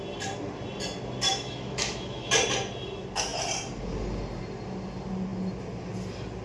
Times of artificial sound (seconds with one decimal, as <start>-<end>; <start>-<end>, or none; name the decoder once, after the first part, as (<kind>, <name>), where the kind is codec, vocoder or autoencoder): 1.3-2.3 (autoencoder, DAC-VAE)